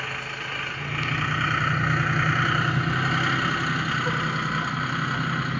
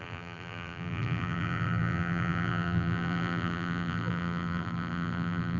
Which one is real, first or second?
first